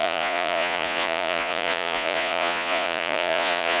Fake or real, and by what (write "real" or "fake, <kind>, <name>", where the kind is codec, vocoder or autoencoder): fake, vocoder, Vocos